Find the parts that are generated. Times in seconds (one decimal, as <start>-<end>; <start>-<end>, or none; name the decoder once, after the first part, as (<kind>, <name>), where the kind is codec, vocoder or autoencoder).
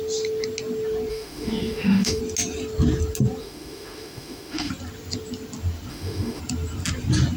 1.1-2.2 (autoencoder, DAC-VAE); 3.4-4.7; 5.9-6.4